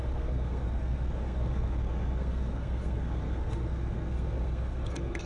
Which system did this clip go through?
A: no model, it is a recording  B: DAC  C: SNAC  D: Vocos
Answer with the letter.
C